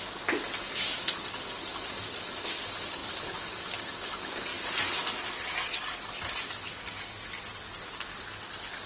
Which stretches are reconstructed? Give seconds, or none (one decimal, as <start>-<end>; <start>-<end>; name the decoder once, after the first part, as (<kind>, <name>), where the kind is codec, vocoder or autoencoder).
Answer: none